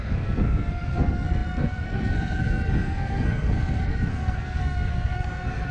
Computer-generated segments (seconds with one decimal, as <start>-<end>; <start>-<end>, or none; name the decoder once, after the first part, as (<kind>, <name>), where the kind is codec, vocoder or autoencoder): 0.0-5.7 (codec, SNAC)